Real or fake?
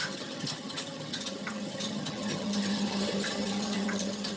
fake